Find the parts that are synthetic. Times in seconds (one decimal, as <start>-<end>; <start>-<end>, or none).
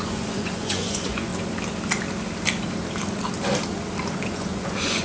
0.0-1.3; 4.3-5.0